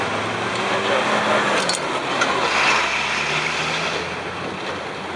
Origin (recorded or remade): recorded